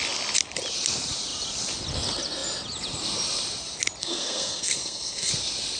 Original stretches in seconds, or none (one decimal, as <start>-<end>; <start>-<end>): 0.0-4.0; 5.3-5.8